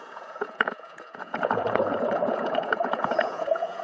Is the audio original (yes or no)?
no